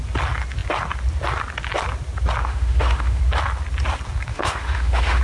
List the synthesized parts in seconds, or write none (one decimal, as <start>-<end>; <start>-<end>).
2.4-3.2; 4.3-5.2